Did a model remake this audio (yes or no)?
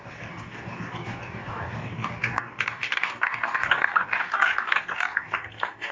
yes